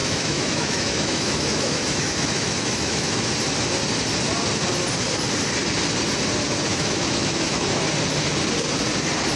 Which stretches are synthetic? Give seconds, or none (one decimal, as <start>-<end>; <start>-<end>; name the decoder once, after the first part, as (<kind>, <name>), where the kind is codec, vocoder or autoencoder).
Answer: 0.0-3.3 (autoencoder, DAC-VAE); 6.7-7.8